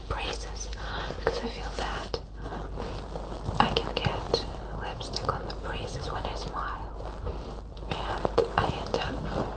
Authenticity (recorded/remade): recorded